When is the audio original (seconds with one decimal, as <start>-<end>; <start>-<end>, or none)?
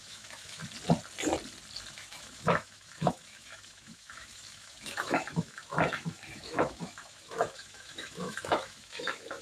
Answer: 0.6-1.9